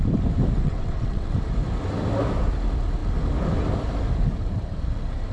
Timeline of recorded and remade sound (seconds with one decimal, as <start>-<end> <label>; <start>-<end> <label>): 0.0-0.6 recorded; 0.6-1.3 remade; 1.3-5.3 recorded